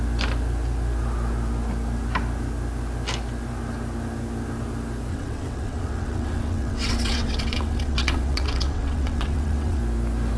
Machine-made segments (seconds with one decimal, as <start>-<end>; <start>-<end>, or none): 5.1-9.8